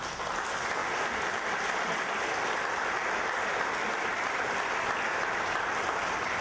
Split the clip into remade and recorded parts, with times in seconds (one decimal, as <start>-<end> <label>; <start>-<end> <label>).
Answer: 0.0-0.8 recorded; 0.8-4.6 remade; 4.6-5.1 recorded; 5.1-6.0 remade; 6.0-6.4 recorded